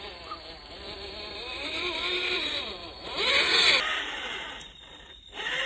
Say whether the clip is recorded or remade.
remade